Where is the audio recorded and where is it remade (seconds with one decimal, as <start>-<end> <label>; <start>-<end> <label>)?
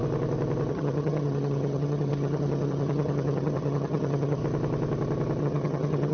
0.0-0.7 recorded; 0.7-4.4 remade; 4.4-5.4 recorded; 5.4-6.1 remade